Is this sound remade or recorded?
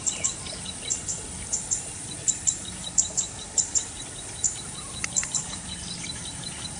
remade